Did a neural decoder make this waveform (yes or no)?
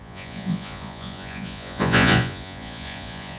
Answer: yes